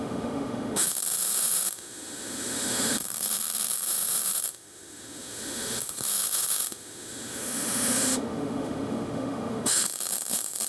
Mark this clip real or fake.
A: fake